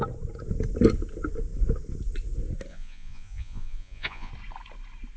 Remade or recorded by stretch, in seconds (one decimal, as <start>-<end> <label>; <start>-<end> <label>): 0.0-2.7 recorded; 2.7-4.3 remade; 4.3-5.2 recorded